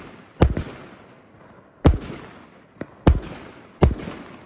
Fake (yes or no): no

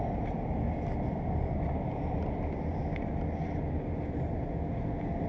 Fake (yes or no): no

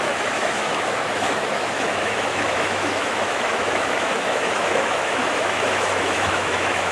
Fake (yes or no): yes